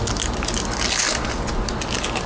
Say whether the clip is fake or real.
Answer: real